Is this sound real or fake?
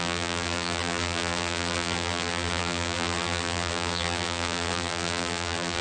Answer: fake